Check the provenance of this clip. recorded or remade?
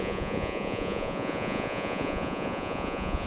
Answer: remade